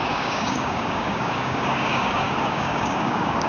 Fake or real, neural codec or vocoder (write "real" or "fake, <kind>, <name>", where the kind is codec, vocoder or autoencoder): fake, codec, DAC